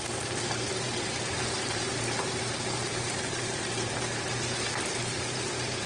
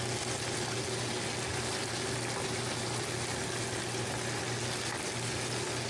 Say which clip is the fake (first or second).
first